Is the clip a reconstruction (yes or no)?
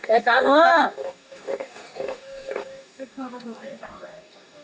yes